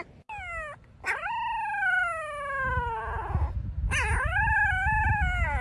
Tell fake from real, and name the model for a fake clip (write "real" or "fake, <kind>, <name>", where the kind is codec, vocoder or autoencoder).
real